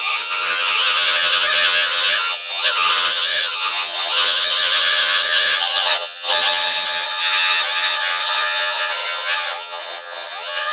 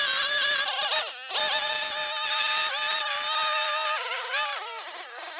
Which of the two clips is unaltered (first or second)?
second